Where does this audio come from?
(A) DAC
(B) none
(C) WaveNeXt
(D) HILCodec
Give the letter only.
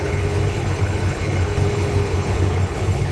D